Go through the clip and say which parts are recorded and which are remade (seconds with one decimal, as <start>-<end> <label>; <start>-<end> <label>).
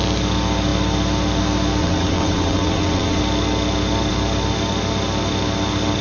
0.0-1.8 recorded; 1.8-3.2 remade; 3.2-6.0 recorded